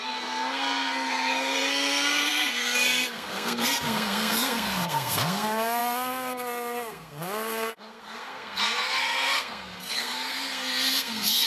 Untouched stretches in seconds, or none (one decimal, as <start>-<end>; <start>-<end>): none